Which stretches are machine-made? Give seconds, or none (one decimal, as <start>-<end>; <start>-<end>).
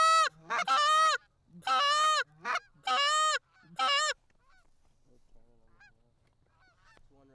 none